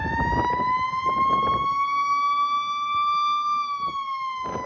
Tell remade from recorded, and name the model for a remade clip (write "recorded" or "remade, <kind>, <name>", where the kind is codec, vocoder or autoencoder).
recorded